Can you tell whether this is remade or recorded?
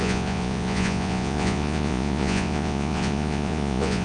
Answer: remade